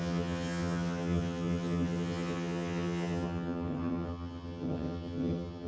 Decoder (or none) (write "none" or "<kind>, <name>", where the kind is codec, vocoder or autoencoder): vocoder, HiFi-GAN